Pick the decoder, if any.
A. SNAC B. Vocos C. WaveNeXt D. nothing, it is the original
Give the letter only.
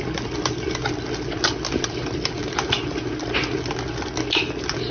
D